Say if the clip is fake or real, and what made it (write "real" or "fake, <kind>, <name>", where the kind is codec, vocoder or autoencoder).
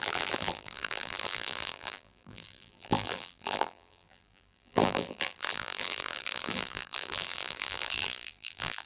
fake, vocoder, BigVGAN v2